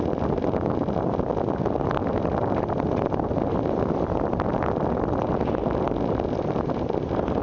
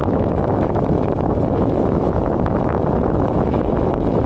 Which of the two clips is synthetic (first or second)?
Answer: second